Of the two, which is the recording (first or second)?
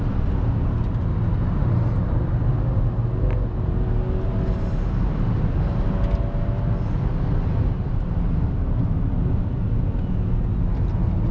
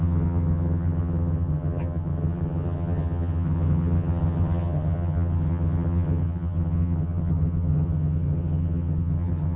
first